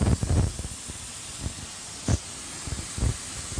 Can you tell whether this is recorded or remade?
recorded